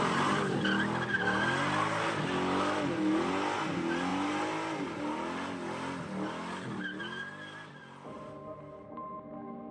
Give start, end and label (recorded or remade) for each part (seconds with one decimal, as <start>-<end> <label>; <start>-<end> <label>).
0.0-9.7 recorded